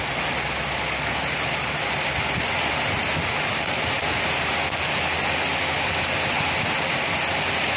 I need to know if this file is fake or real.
real